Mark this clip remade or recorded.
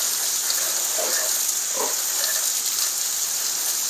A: recorded